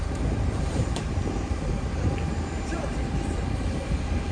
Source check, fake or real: fake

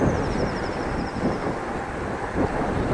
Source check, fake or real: real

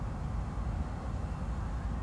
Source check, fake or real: real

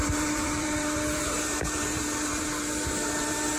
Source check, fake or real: fake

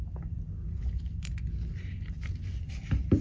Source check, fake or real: real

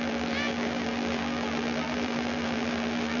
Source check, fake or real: fake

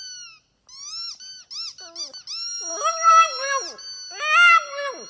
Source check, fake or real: real